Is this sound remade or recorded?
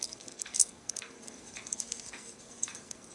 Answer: remade